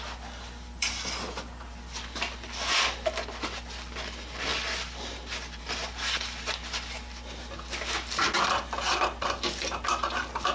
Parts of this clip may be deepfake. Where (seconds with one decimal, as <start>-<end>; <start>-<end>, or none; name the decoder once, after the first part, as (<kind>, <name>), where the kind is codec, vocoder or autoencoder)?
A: none